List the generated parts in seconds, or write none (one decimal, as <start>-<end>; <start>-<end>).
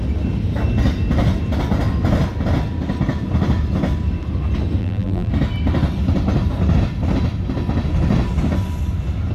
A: 4.8-5.3